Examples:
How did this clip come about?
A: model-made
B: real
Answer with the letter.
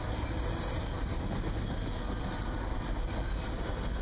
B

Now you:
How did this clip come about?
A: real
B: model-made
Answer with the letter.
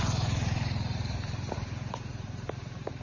B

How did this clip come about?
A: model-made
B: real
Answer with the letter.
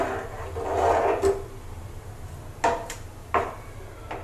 B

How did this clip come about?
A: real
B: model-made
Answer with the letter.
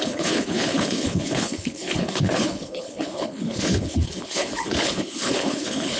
B